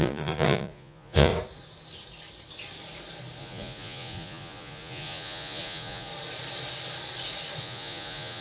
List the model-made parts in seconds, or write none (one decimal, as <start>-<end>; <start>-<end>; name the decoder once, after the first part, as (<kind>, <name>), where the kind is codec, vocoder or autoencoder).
0.0-1.3 (vocoder, Vocos); 3.4-6.1; 7.6-8.4